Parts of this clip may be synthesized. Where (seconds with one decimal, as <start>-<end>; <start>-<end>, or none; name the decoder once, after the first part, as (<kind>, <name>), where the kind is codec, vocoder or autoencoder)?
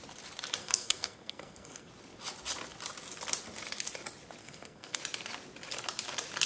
0.6-1.9 (codec, SNAC); 4.4-5.0